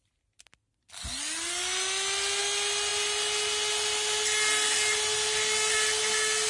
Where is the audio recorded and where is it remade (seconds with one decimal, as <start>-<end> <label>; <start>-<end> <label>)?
0.0-6.5 recorded